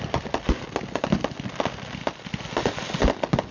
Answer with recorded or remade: recorded